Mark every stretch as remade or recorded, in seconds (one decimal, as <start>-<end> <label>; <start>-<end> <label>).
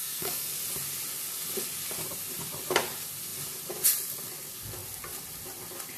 0.0-0.5 remade; 0.5-6.0 recorded